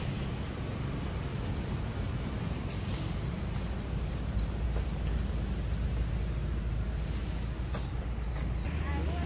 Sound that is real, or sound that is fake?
real